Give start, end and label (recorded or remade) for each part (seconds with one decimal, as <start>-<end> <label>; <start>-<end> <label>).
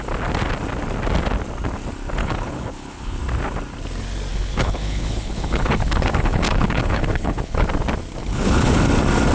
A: 0.0-2.2 recorded; 2.2-3.2 remade; 3.2-4.3 recorded; 4.3-7.7 remade; 7.7-8.2 recorded; 8.2-8.8 remade; 8.8-9.3 recorded